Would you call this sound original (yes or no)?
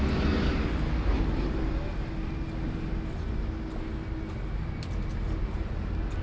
yes